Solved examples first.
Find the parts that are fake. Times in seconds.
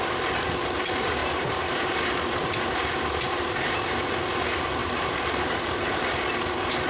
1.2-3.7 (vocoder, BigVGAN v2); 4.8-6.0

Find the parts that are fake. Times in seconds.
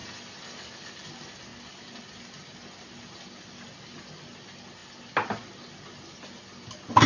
none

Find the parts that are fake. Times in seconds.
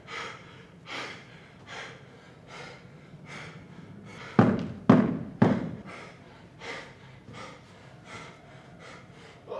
0.0-4.1 (vocoder, BigVGAN v2); 5.9-9.6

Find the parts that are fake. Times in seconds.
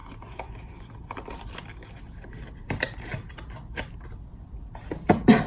0.0-5.5 (vocoder, BigVGAN v2)